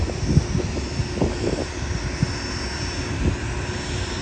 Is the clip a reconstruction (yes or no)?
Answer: no